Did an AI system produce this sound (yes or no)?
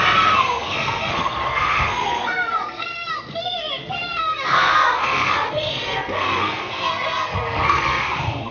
yes